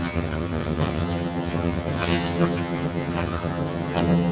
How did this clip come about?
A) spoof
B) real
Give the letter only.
A